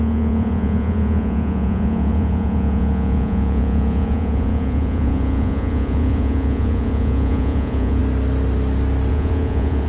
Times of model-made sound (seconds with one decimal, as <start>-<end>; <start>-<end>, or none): 0.0-8.0; 9.1-9.9